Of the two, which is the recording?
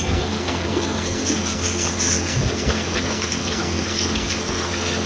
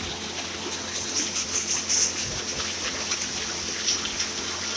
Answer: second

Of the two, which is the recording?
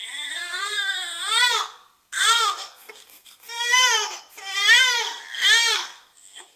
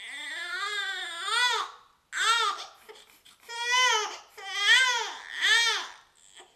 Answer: second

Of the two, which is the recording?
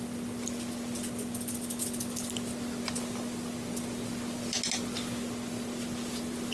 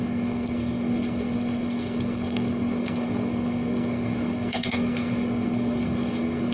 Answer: first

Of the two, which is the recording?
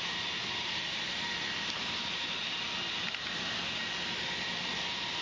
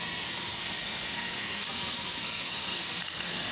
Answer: first